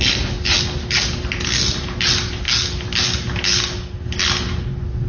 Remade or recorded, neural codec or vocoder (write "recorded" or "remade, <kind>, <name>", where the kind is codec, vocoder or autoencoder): recorded